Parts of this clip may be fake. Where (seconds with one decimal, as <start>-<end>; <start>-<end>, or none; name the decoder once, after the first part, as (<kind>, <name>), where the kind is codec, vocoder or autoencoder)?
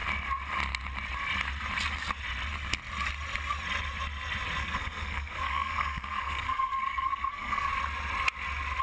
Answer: 4.6-7.7 (codec, SNAC)